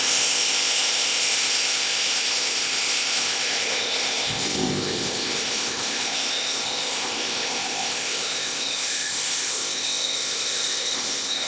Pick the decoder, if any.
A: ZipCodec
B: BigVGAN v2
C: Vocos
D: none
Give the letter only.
A